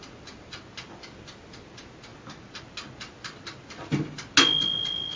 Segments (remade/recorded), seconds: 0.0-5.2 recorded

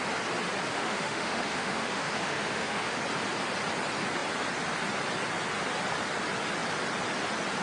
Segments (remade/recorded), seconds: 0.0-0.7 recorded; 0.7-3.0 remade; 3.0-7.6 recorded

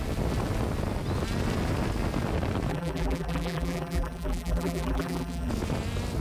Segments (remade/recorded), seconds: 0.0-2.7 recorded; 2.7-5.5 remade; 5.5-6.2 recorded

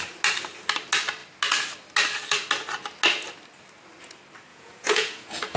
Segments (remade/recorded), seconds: 0.0-4.5 recorded; 4.5-5.6 remade

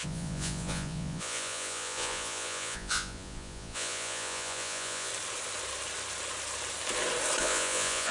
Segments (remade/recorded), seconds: 0.0-5.1 remade; 5.1-7.4 recorded; 7.4-8.1 remade